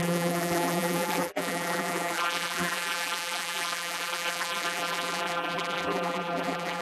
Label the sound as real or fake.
fake